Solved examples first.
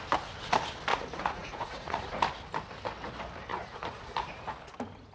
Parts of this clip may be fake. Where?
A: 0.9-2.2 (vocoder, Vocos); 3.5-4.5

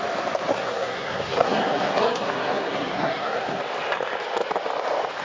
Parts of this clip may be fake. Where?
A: 0.5-3.6 (codec, SNAC)

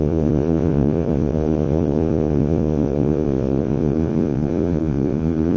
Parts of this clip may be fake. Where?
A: 0.0-5.6 (vocoder, Vocos)